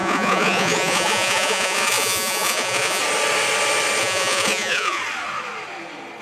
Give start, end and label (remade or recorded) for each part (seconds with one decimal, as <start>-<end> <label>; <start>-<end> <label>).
0.0-3.0 remade; 3.0-4.0 recorded; 4.0-5.0 remade; 5.0-6.2 recorded

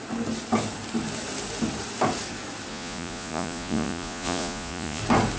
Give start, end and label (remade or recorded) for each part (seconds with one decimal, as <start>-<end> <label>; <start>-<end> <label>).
0.0-2.7 recorded; 2.7-5.0 remade; 5.0-5.4 recorded

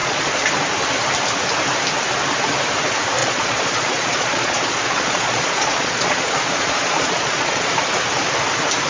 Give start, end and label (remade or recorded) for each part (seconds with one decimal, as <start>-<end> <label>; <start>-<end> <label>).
0.0-0.5 remade; 0.5-3.2 recorded; 3.2-7.7 remade; 7.7-8.9 recorded

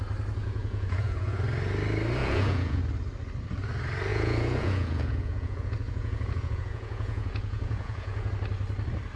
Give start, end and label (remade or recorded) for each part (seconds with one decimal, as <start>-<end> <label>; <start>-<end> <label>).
0.0-0.4 recorded; 0.4-1.4 remade; 1.4-2.2 recorded; 2.2-2.8 remade; 2.8-4.1 recorded; 4.1-8.3 remade; 8.3-9.2 recorded

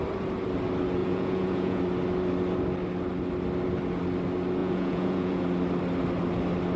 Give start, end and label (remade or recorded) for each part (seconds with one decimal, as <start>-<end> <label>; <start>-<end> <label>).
0.0-1.0 recorded; 1.0-1.8 remade; 1.8-4.6 recorded; 4.6-5.4 remade; 5.4-6.8 recorded